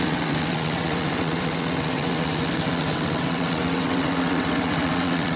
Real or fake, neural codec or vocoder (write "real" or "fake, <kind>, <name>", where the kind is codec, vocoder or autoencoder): fake, vocoder, WaveNeXt